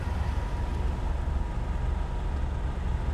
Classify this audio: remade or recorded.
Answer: recorded